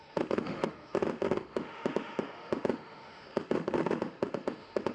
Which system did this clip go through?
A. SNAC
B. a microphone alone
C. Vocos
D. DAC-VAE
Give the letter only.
D